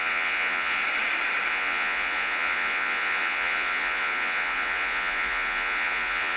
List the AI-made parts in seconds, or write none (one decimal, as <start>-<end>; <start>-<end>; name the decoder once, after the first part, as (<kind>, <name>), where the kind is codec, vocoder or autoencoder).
0.0-0.8 (vocoder, Vocos); 1.5-6.4